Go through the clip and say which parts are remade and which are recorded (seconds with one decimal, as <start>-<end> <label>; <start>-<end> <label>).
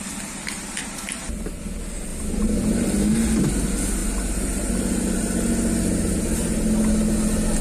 0.0-0.8 recorded; 0.8-1.6 remade; 1.6-4.0 recorded; 4.0-4.7 remade; 4.7-7.6 recorded